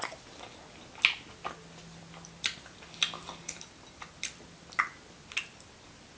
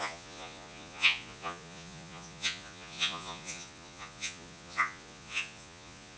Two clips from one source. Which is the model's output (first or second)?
second